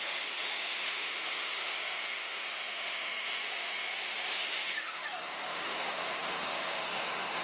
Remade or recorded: remade